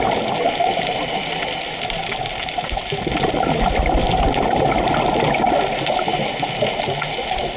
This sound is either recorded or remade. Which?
recorded